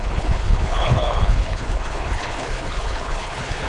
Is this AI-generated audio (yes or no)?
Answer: yes